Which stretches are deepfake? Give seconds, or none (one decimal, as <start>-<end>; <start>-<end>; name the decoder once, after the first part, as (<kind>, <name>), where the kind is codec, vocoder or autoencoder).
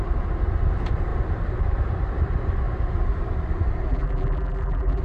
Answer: 3.9-5.0 (vocoder, BigVGAN v2)